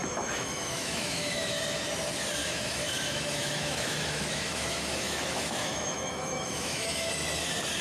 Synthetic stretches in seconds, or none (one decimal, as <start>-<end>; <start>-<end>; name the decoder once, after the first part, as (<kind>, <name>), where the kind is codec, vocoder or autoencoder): 0.0-1.6 (autoencoder, DAC-VAE); 2.4-7.1